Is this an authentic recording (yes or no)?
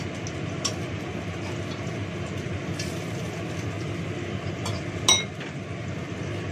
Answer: yes